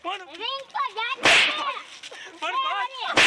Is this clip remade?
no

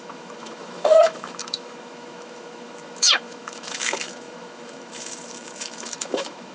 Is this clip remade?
yes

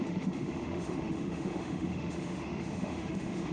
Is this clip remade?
yes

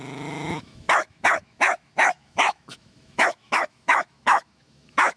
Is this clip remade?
yes